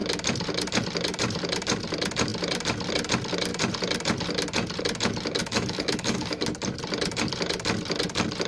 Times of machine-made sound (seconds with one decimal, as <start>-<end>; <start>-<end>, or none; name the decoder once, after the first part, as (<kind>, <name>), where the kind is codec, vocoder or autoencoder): 5.4-6.4 (autoencoder, DAC-VAE)